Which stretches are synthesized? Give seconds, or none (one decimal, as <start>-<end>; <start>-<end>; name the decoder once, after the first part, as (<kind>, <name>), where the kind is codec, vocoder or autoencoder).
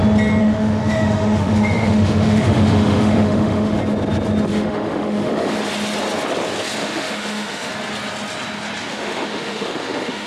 0.4-3.8 (autoencoder, DAC-VAE); 4.5-5.5; 6.8-7.7; 8.9-10.3